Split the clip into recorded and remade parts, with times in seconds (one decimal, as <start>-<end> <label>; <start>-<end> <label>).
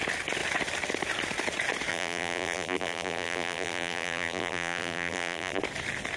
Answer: 0.0-1.9 recorded; 1.9-5.6 remade; 5.6-6.2 recorded